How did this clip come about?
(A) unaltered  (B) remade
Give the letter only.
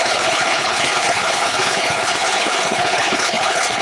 B